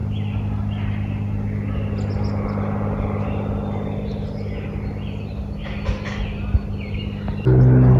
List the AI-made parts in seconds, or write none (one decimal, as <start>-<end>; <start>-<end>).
none